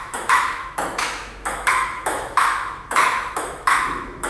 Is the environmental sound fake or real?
fake